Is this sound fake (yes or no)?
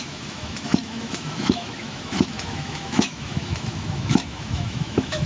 yes